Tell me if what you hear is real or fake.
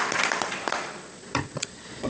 fake